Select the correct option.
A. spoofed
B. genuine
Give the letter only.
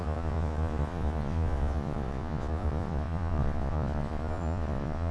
A